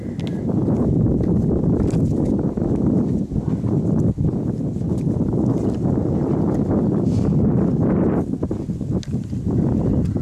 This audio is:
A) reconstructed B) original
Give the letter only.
B